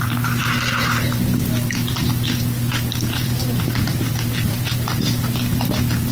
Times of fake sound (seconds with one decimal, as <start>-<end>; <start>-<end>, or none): 0.0-6.1